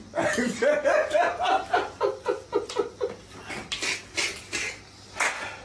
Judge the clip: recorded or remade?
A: recorded